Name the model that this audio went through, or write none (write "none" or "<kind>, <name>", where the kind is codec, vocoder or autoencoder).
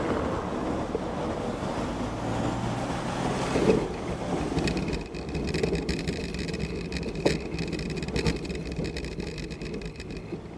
none